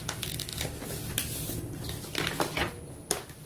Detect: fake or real real